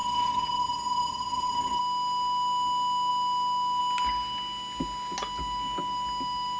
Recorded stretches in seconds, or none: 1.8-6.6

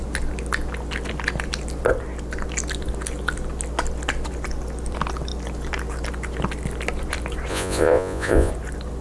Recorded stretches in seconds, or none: 0.0-7.5; 8.5-9.0